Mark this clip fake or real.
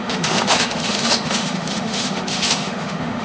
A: fake